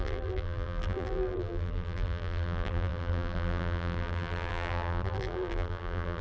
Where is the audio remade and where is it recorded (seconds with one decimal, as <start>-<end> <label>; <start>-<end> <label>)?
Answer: 0.0-6.2 remade